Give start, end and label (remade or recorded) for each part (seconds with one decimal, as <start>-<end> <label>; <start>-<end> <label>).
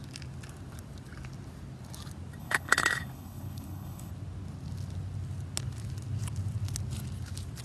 0.0-2.4 recorded; 2.4-4.1 remade; 4.1-7.6 recorded